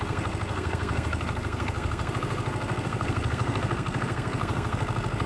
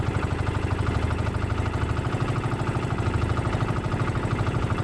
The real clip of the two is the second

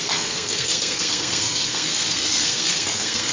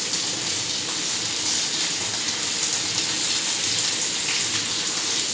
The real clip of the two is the second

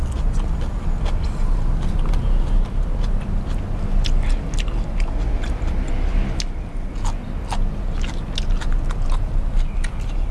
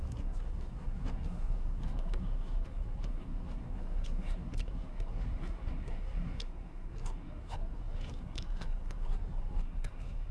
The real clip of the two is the first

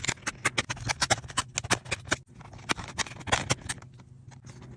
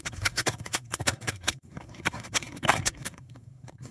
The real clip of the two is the first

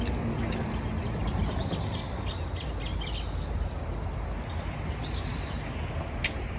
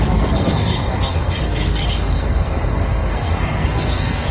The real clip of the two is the first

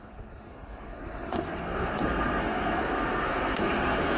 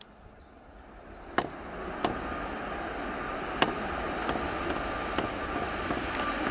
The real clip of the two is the second